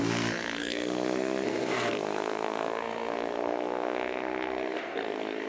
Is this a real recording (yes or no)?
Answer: no